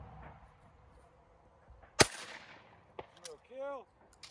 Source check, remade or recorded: recorded